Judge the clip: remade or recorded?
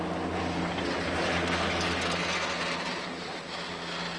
recorded